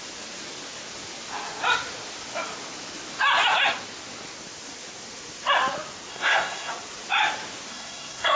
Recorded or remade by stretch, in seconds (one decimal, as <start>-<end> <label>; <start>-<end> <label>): 0.0-6.1 recorded; 6.1-6.7 remade; 6.7-7.7 recorded; 7.7-8.4 remade